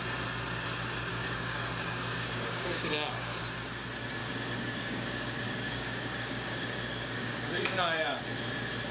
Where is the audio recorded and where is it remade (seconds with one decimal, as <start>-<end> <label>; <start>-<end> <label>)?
0.0-1.1 recorded; 1.1-3.4 remade; 3.4-4.2 recorded; 4.2-8.2 remade; 8.2-8.9 recorded